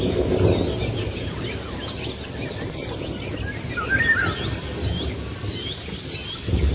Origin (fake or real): real